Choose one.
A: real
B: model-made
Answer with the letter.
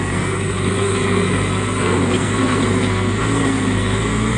B